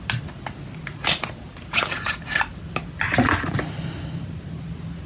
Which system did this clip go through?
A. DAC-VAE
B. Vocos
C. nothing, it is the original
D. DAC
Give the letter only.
C